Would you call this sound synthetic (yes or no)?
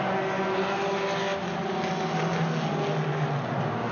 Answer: no